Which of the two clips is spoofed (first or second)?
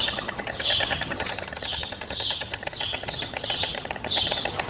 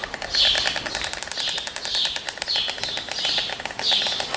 first